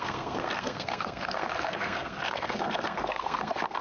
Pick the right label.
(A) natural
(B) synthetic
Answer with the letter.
B